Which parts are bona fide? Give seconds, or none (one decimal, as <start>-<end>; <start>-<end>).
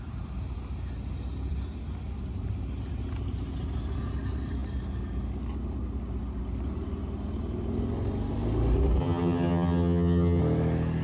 0.0-9.0; 10.4-11.0